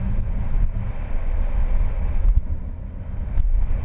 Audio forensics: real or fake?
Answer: real